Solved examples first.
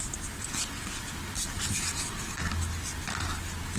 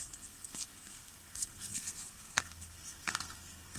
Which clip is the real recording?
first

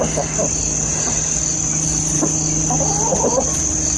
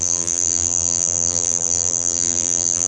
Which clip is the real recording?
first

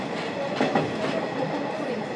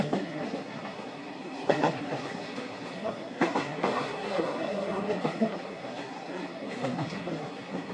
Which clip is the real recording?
first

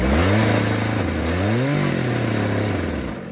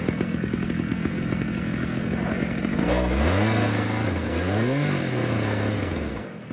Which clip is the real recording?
first